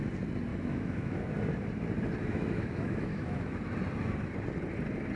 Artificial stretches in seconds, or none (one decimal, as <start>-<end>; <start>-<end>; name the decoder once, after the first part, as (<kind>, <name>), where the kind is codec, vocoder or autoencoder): 0.5-1.2 (autoencoder, DAC-VAE); 2.2-3.6

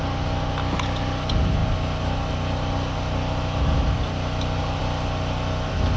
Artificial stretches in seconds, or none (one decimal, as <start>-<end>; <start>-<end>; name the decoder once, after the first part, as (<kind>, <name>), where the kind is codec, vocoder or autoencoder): none

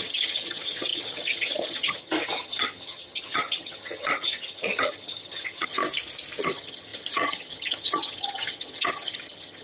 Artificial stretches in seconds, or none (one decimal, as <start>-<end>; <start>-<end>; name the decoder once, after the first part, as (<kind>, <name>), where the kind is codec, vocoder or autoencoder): 0.0-5.8 (vocoder, HiFi-GAN); 6.4-9.6

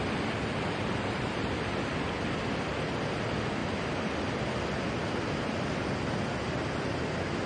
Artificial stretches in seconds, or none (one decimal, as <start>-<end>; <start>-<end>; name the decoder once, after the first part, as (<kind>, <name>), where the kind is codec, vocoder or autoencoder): none